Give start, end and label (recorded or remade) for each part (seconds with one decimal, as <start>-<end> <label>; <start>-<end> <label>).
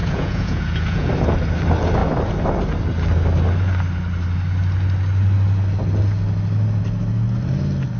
0.0-1.1 remade; 1.1-8.0 recorded